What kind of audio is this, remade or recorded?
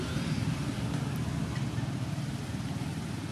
remade